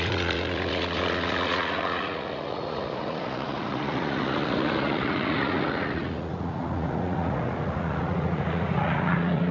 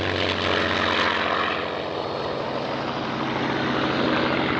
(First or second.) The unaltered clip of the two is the second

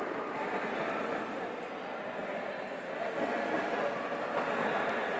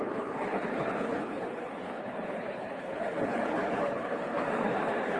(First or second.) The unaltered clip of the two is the first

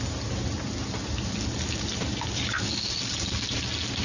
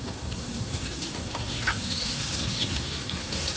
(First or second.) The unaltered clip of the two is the first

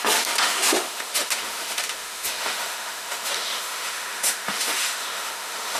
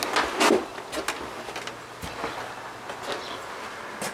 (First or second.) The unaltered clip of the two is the second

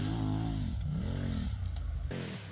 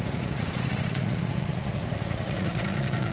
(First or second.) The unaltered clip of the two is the first